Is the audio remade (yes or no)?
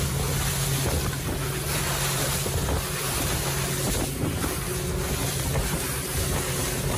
no